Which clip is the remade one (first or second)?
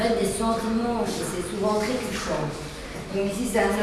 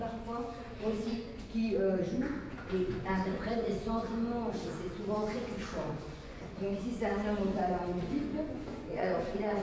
second